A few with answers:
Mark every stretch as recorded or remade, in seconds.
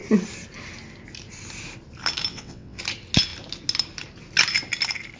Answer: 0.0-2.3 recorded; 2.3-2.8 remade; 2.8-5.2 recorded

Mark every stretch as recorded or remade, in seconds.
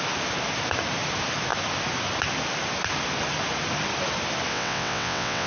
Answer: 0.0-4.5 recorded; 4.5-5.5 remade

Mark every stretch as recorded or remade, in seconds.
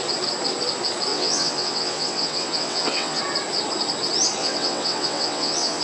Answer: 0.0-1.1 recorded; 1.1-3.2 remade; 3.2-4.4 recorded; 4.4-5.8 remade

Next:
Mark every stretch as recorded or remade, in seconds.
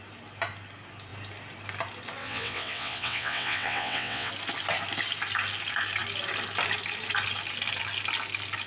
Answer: 0.0-2.2 recorded; 2.2-4.3 remade; 4.3-8.7 recorded